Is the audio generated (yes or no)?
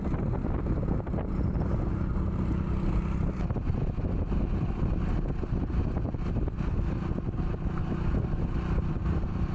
no